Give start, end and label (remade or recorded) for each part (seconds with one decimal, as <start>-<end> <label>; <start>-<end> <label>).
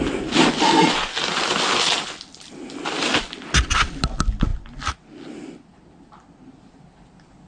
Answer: 0.0-7.5 recorded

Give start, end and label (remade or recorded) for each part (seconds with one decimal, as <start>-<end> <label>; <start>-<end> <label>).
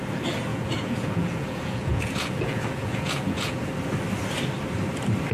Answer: 0.0-0.5 recorded; 0.5-3.7 remade; 3.7-5.3 recorded